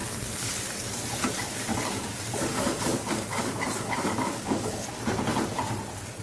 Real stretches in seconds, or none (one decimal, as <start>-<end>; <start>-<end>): 0.5-1.2; 4.9-6.2